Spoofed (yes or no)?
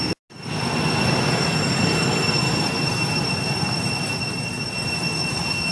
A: no